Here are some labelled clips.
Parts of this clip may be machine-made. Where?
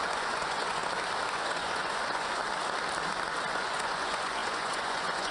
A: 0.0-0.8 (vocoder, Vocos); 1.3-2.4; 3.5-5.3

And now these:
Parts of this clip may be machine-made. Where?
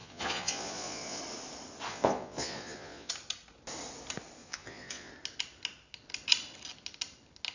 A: 0.0-1.2 (vocoder, Vocos); 1.9-3.1; 4.4-5.1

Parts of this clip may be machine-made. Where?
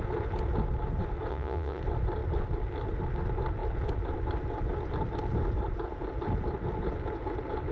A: 1.3-1.8 (vocoder, Vocos)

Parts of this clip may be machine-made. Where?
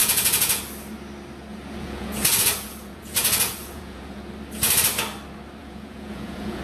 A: 0.0-0.6 (vocoder, Vocos); 1.5-4.2; 5.6-6.6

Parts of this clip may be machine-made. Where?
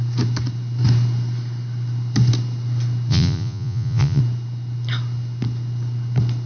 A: 3.1-4.2 (vocoder, Vocos)